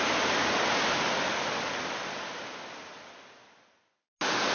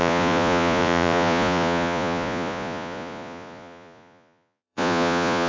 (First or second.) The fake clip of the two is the second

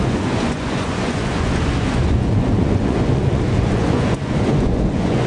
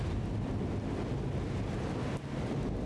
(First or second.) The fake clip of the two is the first